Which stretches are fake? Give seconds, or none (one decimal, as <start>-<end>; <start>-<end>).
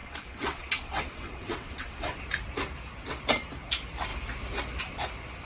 0.0-2.2